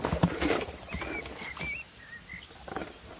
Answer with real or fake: real